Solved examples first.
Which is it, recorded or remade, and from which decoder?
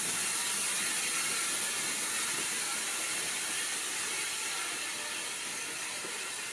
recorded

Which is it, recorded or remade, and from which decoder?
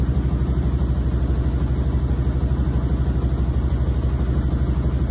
recorded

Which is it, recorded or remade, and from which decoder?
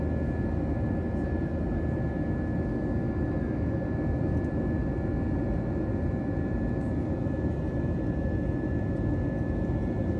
recorded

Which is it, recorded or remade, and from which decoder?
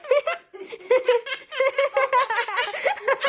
recorded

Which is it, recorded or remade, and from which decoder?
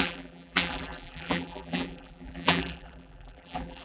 remade, vocoder, BigVGAN v2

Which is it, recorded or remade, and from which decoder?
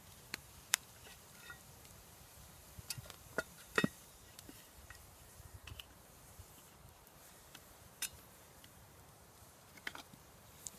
remade, vocoder, BigVGAN v2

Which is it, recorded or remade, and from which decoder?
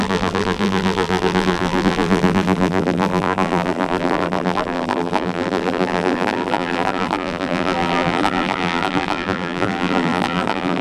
remade, vocoder, BigVGAN v2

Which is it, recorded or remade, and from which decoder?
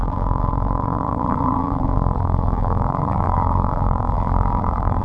remade, vocoder, BigVGAN v2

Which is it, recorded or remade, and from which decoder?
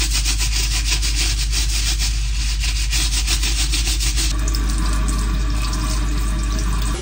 recorded